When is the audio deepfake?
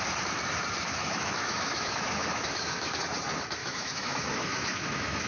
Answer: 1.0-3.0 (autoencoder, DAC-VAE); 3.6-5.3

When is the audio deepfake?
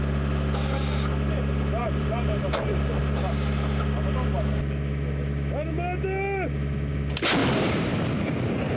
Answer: 1.8-3.0 (vocoder, BigVGAN v2); 7.4-8.0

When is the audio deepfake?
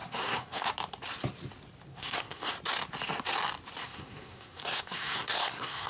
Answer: 0.0-0.7 (codec, SNAC); 1.9-2.5; 3.8-5.9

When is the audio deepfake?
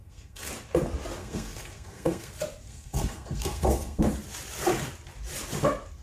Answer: 0.0-0.5 (codec, SNAC); 1.2-2.3; 2.7-4.0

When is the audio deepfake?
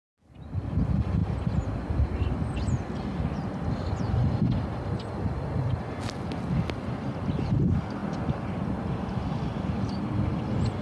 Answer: none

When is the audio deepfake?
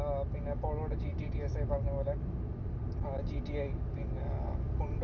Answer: none